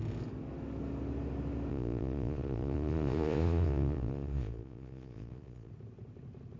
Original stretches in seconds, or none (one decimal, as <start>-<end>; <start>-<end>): 0.0-1.7; 5.7-6.6